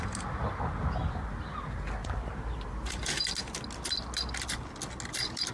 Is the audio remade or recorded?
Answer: recorded